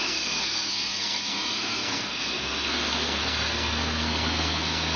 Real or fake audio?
fake